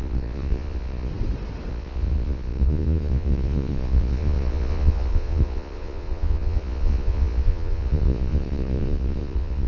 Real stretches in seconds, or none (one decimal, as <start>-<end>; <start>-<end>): 1.1-1.7